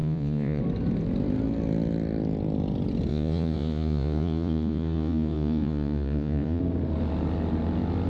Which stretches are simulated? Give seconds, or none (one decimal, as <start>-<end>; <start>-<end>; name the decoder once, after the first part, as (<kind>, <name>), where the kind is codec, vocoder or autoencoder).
0.0-0.6 (vocoder, Vocos); 3.1-6.6